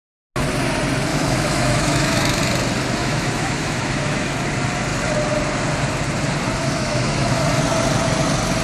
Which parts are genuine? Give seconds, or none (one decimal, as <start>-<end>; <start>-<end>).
0.0-1.1; 2.4-3.0; 4.3-6.6; 7.4-8.6